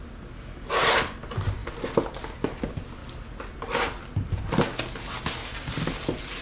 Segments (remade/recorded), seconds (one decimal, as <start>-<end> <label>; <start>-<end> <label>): 0.0-6.4 recorded